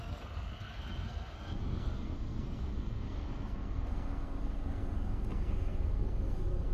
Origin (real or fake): fake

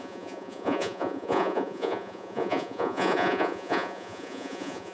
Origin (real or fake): fake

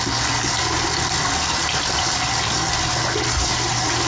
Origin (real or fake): real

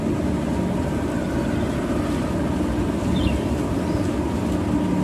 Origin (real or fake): real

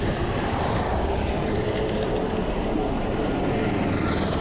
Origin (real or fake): real